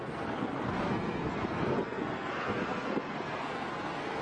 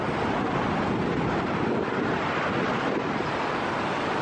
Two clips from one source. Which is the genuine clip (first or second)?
second